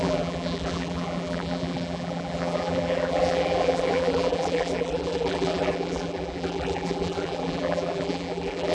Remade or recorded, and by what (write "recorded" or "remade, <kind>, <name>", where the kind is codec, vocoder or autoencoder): remade, vocoder, BigVGAN v2